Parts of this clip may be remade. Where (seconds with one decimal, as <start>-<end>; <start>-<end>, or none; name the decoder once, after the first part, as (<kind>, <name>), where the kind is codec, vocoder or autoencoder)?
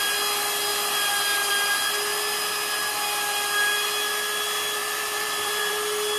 4.8-5.7 (vocoder, BigVGAN v2)